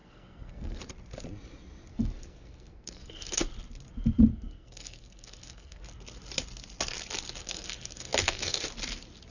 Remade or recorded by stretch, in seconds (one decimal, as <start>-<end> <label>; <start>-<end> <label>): 0.0-0.8 remade; 0.8-1.9 recorded; 1.9-3.4 remade; 3.4-4.3 recorded; 4.3-5.8 remade; 5.8-7.4 recorded; 7.4-8.6 remade; 8.6-9.3 recorded